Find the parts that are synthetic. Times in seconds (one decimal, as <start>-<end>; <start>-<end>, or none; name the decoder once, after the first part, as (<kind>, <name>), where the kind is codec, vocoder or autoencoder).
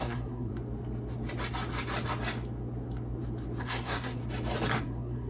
0.0-0.5 (codec, SNAC); 3.6-4.2; 4.8-5.3